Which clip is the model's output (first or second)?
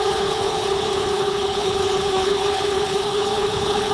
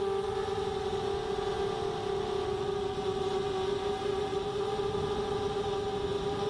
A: first